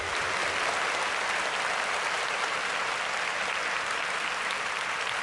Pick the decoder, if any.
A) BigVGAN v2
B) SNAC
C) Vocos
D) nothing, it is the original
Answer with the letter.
D